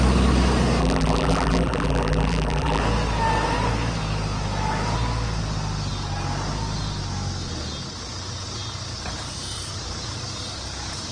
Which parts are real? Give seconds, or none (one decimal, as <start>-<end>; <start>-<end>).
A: 0.0-0.8; 2.8-11.1